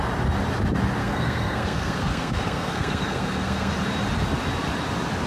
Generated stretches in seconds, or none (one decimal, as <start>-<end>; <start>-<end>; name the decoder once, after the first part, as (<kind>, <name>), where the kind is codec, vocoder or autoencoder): 1.0-3.7 (codec, SNAC)